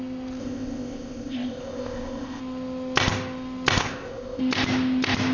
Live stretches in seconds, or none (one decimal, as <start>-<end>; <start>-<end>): 0.0-0.4; 2.4-3.8; 4.4-5.3